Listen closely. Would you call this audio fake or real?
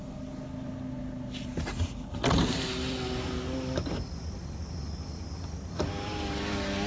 real